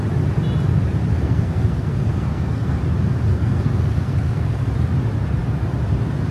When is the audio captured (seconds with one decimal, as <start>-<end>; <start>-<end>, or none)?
0.0-1.1; 2.8-3.3; 4.7-6.3